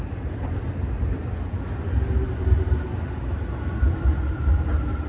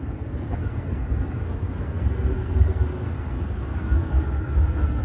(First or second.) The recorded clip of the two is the first